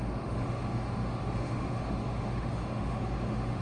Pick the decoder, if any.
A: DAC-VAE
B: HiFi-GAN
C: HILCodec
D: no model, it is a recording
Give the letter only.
A